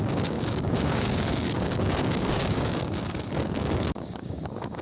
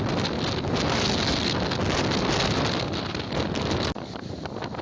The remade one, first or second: first